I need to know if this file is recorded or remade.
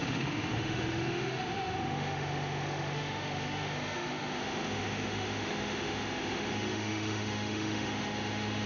remade